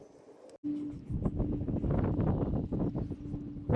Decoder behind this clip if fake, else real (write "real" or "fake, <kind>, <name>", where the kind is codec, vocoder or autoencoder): real